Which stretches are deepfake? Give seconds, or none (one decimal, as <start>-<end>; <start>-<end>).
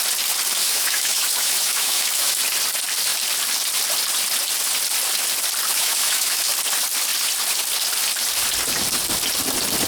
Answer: 0.6-2.4; 5.7-6.5